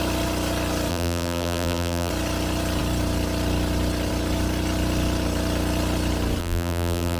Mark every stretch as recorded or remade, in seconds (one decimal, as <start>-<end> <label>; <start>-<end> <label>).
0.0-0.9 recorded; 0.9-2.1 remade; 2.1-6.4 recorded; 6.4-7.2 remade